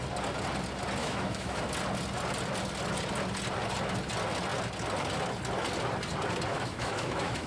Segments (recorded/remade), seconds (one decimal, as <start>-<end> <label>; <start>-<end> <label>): 0.0-1.0 recorded; 1.0-1.6 remade; 1.6-6.5 recorded; 6.5-7.5 remade